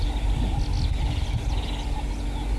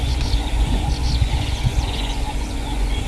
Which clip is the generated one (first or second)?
second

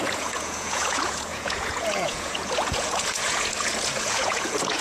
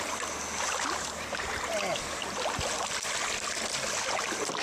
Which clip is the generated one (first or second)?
first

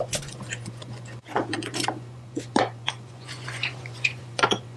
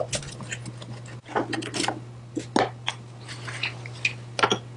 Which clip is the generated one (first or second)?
first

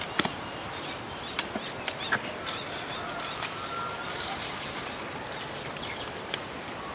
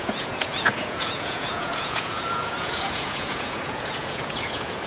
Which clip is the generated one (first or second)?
second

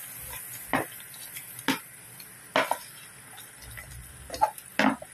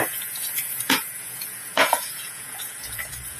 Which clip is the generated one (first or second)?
second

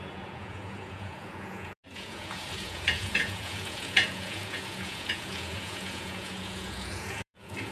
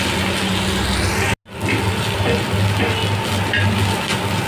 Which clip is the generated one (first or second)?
first